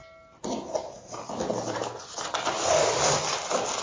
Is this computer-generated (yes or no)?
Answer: no